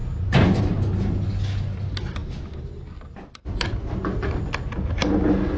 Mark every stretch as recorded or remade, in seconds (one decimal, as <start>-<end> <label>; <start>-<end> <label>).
0.0-5.6 recorded